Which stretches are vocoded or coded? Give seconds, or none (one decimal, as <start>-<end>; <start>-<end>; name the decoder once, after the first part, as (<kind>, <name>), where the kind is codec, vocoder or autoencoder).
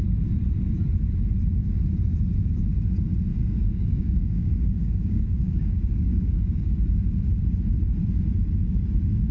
3.3-6.8 (codec, DAC)